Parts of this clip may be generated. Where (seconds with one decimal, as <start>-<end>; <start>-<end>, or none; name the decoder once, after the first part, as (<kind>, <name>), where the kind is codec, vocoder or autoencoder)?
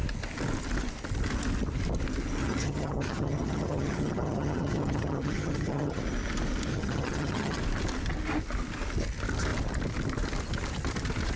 2.4-6.0 (vocoder, HiFi-GAN); 6.7-7.6